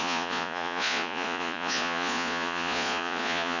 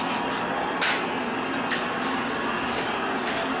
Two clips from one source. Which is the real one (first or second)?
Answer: second